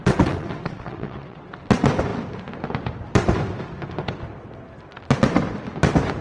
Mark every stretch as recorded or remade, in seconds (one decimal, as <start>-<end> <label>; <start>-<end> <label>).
0.0-1.5 remade; 1.5-6.2 recorded